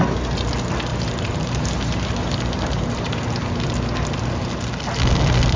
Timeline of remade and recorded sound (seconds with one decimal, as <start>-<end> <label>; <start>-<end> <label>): 0.0-0.9 recorded; 0.9-3.2 remade; 3.2-5.6 recorded